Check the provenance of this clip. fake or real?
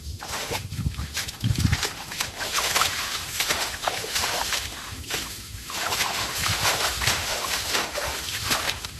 fake